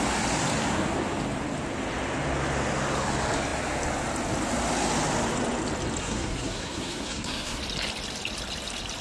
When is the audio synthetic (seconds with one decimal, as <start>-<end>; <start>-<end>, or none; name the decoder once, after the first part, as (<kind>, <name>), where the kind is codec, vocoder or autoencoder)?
6.0-7.6 (codec, SNAC)